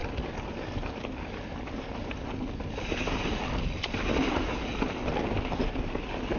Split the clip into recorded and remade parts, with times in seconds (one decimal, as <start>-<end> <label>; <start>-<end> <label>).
0.0-6.4 recorded